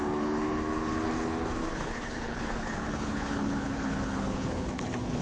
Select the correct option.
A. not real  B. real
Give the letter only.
A